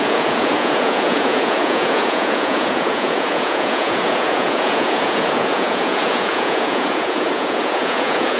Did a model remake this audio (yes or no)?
yes